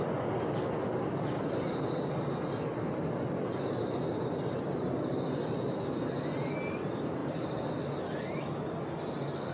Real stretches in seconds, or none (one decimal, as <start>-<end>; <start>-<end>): 0.0-9.5